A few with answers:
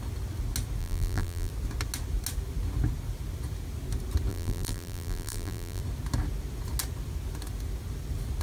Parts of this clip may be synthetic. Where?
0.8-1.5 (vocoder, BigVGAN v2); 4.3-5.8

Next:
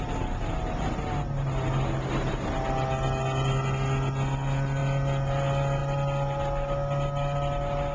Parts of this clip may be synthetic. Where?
none

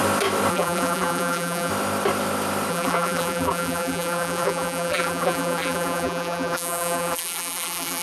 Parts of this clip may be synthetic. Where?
0.5-1.7 (vocoder, BigVGAN v2); 2.7-8.0

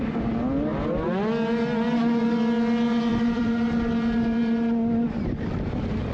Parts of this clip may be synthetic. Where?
3.1-3.9 (vocoder, BigVGAN v2)